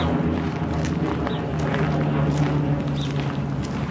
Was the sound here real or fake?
real